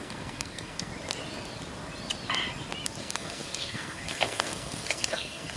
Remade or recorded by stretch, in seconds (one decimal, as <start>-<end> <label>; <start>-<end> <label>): 0.0-0.9 remade; 0.9-3.0 recorded; 3.0-5.6 remade